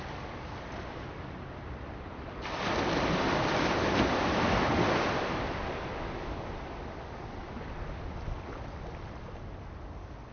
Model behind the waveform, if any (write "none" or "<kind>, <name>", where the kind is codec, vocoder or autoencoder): none